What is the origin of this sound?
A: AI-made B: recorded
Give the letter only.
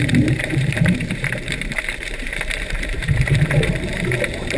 A